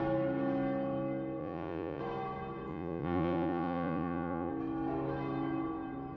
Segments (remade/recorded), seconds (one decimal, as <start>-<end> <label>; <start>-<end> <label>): 0.0-1.4 recorded; 1.4-2.0 remade; 2.0-2.7 recorded; 2.7-4.5 remade; 4.5-6.2 recorded